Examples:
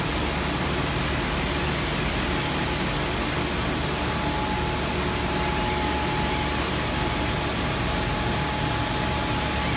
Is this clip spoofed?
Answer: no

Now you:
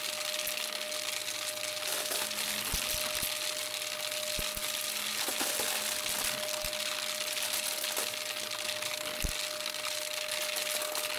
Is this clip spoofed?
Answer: no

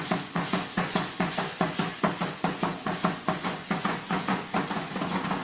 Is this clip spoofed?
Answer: yes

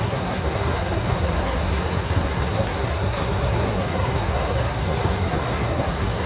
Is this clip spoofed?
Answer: yes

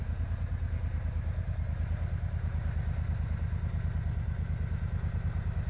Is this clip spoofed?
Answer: no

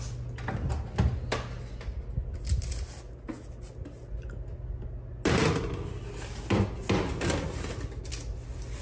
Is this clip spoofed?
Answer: no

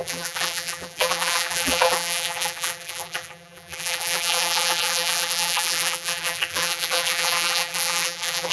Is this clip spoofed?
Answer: yes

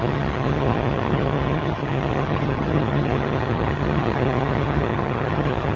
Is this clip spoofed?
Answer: yes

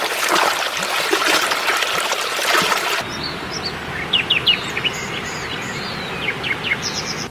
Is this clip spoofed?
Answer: no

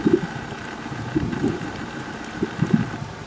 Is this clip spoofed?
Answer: yes